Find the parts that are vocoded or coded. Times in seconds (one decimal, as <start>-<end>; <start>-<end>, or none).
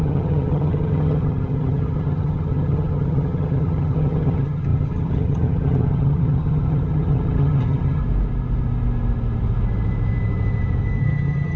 0.0-8.0; 11.0-11.6